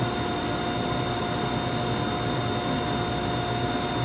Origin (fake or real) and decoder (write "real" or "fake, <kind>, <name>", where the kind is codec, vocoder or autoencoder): real